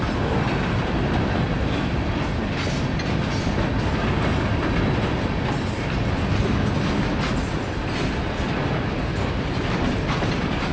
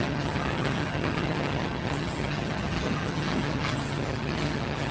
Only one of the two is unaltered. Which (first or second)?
first